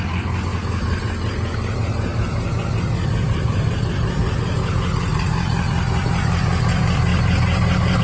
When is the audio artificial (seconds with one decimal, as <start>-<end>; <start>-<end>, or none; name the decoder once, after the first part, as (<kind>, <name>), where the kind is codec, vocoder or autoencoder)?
none